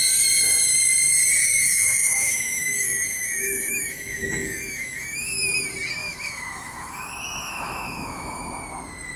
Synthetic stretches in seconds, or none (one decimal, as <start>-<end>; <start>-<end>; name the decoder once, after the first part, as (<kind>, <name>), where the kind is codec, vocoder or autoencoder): 1.4-5.4 (autoencoder, DAC-VAE); 6.0-8.4